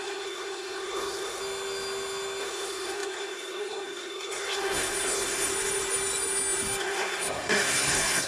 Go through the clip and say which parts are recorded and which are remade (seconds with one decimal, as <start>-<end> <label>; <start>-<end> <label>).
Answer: 0.0-1.4 remade; 1.4-2.4 recorded; 2.4-5.5 remade; 5.5-6.8 recorded; 6.8-8.3 remade